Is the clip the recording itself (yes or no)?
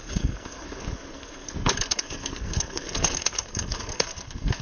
no